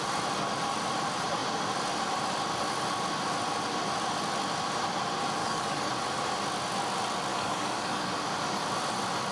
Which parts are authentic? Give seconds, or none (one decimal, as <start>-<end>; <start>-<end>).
0.0-5.4; 5.9-7.3; 8.1-9.3